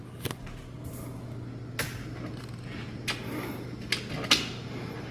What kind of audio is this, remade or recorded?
recorded